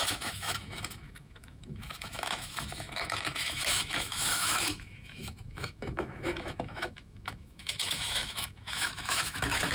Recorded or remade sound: remade